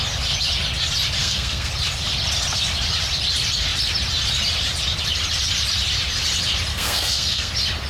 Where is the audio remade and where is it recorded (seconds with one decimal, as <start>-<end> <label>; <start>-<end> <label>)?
0.0-1.2 recorded; 1.2-1.7 remade; 1.7-6.7 recorded; 6.7-7.5 remade; 7.5-7.9 recorded